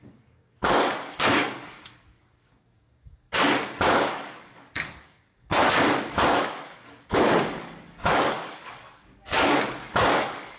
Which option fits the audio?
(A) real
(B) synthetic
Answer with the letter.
B